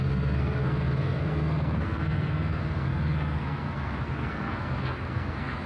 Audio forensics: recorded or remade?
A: remade